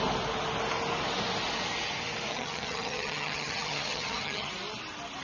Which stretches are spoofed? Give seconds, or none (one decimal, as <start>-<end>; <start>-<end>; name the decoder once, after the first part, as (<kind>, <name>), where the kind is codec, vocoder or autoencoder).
2.3-4.5 (vocoder, HiFi-GAN)